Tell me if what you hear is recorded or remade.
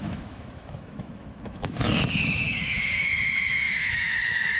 remade